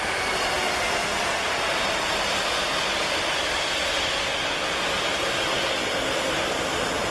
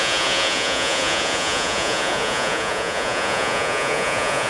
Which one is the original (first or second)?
first